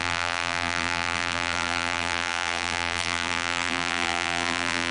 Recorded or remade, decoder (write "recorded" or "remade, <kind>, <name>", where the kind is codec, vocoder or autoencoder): remade, vocoder, BigVGAN v2